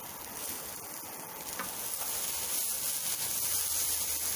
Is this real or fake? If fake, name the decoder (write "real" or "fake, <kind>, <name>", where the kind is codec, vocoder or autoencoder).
real